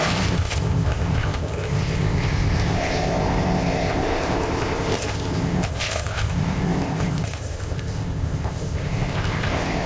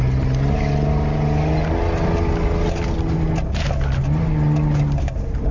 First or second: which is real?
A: second